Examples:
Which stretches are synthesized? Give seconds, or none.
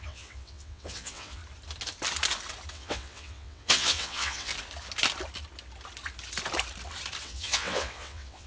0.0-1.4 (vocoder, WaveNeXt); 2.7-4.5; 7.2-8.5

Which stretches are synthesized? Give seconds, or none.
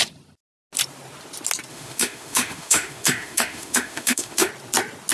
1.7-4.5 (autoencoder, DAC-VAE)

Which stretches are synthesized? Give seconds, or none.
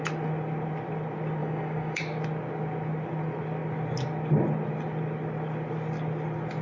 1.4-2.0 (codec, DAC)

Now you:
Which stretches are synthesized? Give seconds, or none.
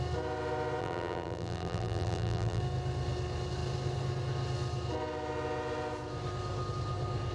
0.8-2.6 (vocoder, BigVGAN v2)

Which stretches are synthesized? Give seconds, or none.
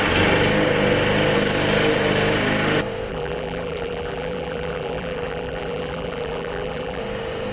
3.1-7.0 (vocoder, BigVGAN v2)